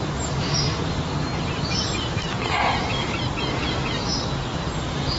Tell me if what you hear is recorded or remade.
recorded